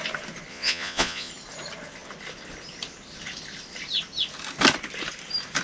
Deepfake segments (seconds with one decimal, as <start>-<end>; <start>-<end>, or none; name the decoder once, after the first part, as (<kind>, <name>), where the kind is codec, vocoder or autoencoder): 0.5-1.3 (vocoder, Vocos)